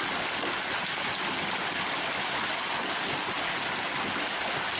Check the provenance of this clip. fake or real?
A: real